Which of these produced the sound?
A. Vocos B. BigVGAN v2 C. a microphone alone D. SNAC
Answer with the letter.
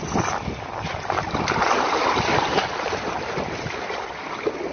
C